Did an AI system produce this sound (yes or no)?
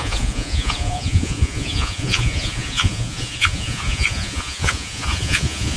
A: yes